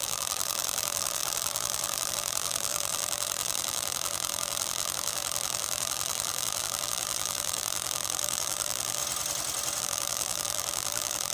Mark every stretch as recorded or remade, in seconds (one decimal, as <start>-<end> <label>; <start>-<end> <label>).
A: 0.0-9.0 remade; 9.0-9.8 recorded; 9.8-11.3 remade